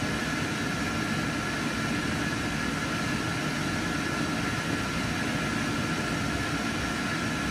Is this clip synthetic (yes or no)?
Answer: no